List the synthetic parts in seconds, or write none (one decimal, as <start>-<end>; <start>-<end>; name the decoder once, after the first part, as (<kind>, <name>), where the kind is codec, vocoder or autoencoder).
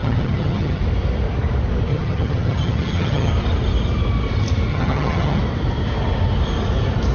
0.0-0.8 (vocoder, HiFi-GAN); 1.9-3.3; 4.7-5.4